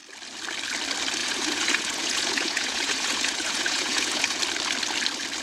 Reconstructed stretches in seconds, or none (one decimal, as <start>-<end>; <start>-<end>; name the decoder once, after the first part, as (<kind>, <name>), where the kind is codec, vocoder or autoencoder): 1.2-4.4 (vocoder, Vocos)